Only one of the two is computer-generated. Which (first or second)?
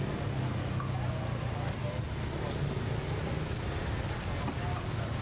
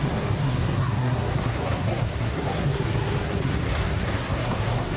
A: second